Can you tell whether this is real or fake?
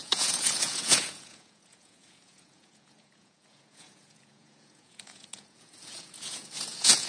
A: fake